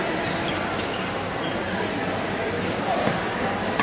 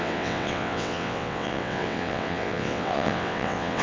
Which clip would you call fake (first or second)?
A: second